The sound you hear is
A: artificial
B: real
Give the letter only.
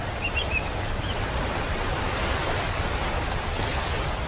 B